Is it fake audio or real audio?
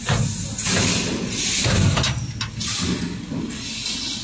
real